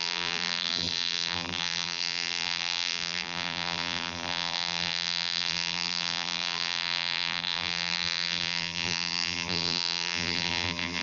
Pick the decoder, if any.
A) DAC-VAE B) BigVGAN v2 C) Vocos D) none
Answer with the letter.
B